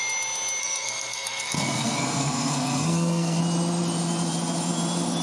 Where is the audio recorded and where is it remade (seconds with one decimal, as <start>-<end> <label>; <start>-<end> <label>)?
0.0-0.6 recorded; 0.6-3.4 remade; 3.4-5.2 recorded

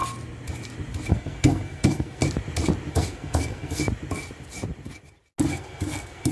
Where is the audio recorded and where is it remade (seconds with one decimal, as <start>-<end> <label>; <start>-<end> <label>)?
0.0-1.1 recorded; 1.1-2.2 remade; 2.2-2.9 recorded; 2.9-3.8 remade; 3.8-5.5 recorded; 5.5-6.3 remade

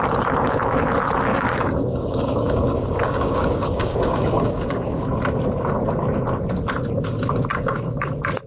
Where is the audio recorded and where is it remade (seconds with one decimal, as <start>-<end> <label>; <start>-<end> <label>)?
0.0-1.3 recorded; 1.3-5.0 remade; 5.0-7.5 recorded; 7.5-8.1 remade; 8.1-8.5 recorded

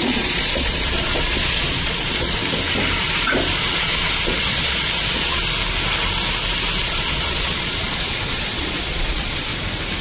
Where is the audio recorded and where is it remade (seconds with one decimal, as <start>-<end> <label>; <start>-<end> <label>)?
0.0-2.4 remade; 2.4-3.7 recorded; 3.7-5.4 remade; 5.4-6.8 recorded; 6.8-9.5 remade; 9.5-10.0 recorded

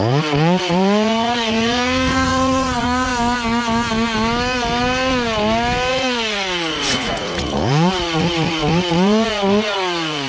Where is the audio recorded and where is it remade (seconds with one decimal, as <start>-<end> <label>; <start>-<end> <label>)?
0.0-3.1 remade; 3.1-5.9 recorded; 5.9-10.3 remade

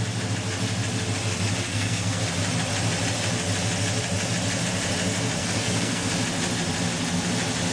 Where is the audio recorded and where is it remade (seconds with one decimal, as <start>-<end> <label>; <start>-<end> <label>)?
0.0-1.7 recorded; 1.7-2.2 remade; 2.2-5.4 recorded; 5.4-6.1 remade; 6.1-7.7 recorded

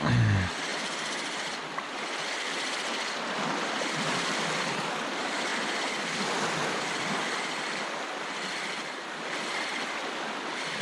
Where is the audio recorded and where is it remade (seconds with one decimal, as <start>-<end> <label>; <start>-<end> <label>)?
0.0-10.8 recorded

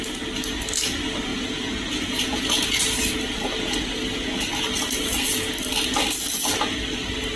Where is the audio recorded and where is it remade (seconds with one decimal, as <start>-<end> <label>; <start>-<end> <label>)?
0.0-1.3 recorded; 1.3-2.8 remade; 2.8-7.4 recorded